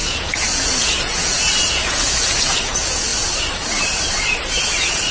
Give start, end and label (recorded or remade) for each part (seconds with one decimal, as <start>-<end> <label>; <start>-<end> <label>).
0.0-3.1 remade; 3.1-4.5 recorded; 4.5-5.1 remade